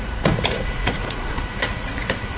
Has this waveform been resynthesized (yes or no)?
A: yes